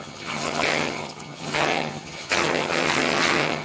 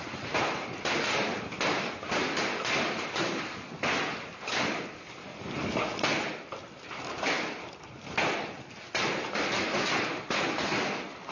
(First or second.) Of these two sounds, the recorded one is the second